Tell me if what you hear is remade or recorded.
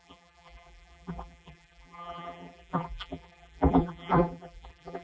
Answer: remade